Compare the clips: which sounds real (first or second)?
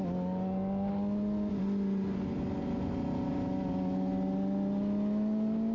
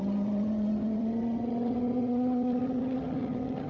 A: first